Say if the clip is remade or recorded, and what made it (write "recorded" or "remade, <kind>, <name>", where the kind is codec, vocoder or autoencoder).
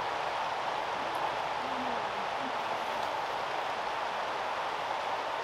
recorded